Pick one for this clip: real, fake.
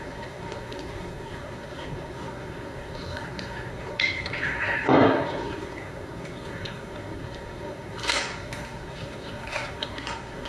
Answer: fake